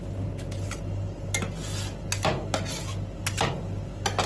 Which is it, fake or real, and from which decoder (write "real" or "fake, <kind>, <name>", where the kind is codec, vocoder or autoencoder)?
real